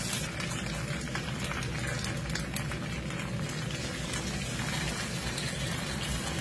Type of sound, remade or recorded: recorded